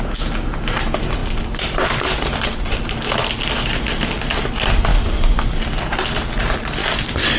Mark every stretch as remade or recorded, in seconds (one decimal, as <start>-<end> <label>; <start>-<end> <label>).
0.0-7.4 recorded